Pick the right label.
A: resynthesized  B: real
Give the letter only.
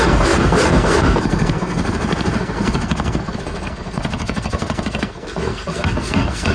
A